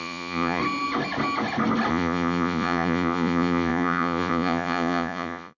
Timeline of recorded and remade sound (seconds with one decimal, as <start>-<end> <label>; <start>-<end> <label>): 0.0-0.6 remade; 0.6-1.9 recorded; 1.9-5.6 remade